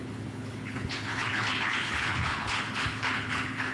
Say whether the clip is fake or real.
fake